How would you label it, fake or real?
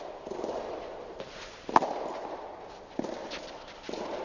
real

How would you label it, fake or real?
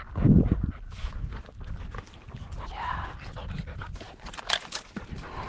real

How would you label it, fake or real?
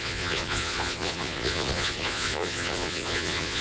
fake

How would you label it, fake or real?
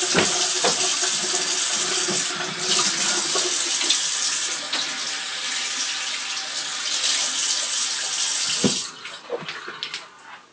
real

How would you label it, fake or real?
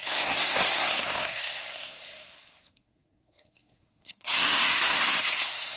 fake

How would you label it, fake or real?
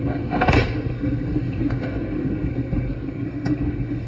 fake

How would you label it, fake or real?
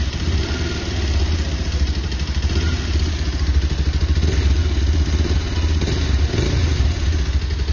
real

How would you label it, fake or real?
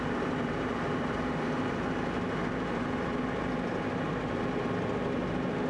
real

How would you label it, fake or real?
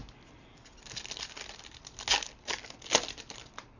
real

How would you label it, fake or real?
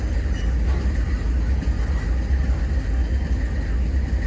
real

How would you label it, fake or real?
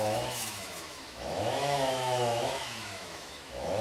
fake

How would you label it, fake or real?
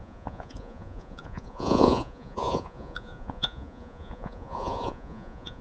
fake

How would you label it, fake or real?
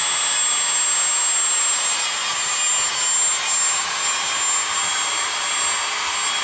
real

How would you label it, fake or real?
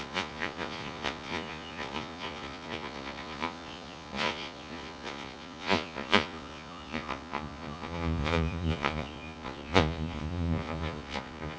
fake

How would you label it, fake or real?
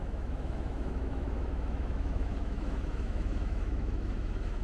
fake